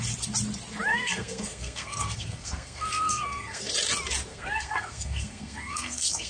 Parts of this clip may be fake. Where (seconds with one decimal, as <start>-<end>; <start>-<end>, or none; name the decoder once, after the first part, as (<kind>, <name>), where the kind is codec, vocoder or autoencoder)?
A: 0.9-3.7 (codec, SNAC); 4.3-6.3